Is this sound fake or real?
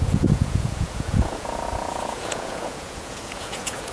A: fake